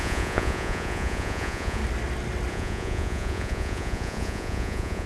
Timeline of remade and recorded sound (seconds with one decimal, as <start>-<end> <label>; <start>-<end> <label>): 0.0-1.8 remade; 1.8-2.5 recorded; 2.5-5.1 remade